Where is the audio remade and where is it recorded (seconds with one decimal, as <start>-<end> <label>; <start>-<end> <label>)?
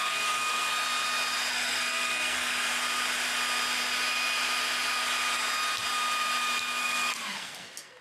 0.0-0.7 remade; 0.7-1.5 recorded; 1.5-2.7 remade; 2.7-6.8 recorded; 6.8-8.0 remade